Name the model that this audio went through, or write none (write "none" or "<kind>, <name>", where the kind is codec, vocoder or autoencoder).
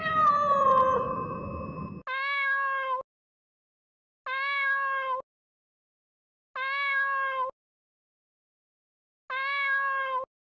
none